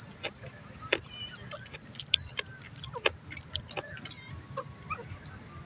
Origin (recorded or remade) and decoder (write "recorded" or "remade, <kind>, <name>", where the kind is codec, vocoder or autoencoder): recorded